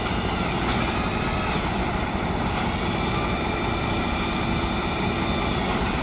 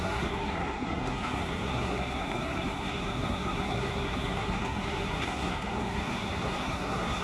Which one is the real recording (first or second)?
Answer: first